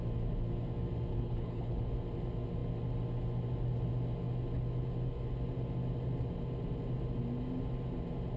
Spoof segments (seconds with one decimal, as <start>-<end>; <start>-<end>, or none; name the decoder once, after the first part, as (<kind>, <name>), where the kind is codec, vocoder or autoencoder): 1.1-1.8 (codec, HILCodec)